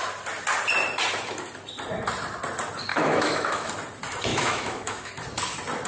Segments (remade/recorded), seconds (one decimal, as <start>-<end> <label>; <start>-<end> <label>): 0.0-2.9 recorded; 2.9-3.7 remade; 3.7-4.3 recorded; 4.3-5.1 remade; 5.1-5.9 recorded